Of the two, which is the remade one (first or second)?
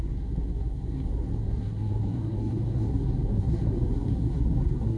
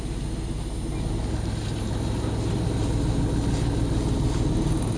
first